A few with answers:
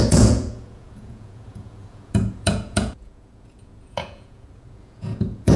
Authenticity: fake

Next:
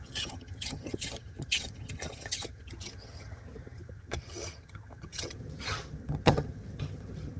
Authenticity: fake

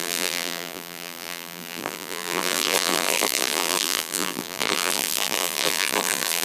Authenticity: fake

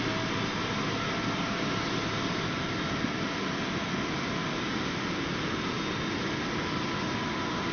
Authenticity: real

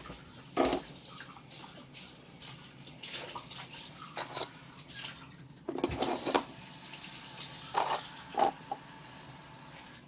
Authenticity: real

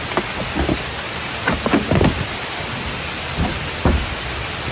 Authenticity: real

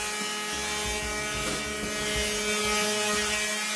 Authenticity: real